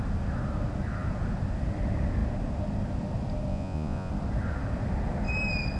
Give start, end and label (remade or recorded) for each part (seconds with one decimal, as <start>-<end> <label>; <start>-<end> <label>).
0.0-3.5 recorded; 3.5-4.1 remade; 4.1-5.8 recorded